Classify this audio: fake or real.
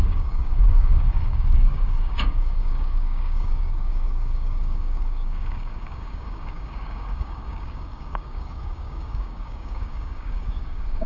fake